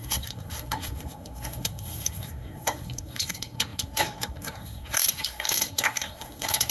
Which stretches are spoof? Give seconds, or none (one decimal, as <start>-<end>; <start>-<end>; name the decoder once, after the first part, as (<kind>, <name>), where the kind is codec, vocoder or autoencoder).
0.0-6.7 (codec, SNAC)